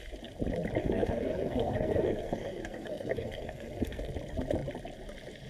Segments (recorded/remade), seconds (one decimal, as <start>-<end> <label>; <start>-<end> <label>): 0.0-0.8 recorded; 0.8-4.1 remade; 4.1-5.5 recorded